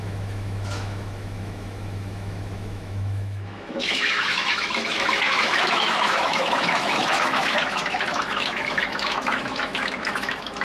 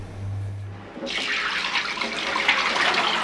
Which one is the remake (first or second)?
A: first